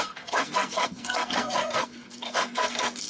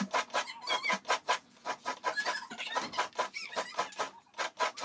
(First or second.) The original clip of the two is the second